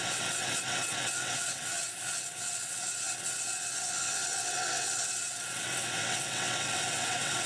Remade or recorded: remade